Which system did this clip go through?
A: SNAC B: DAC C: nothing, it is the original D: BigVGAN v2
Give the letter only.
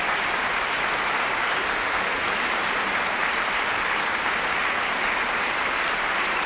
D